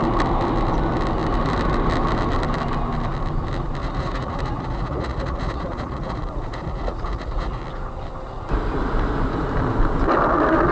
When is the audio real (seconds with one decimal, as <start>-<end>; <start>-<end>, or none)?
0.0-3.8; 7.6-10.7